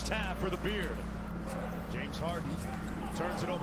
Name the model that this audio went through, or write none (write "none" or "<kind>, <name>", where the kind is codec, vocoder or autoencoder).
none